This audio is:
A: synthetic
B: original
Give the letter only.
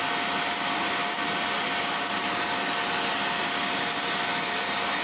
B